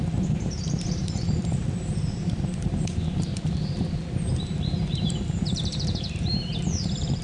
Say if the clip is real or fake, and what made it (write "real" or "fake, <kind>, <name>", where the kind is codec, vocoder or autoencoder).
fake, vocoder, BigVGAN v2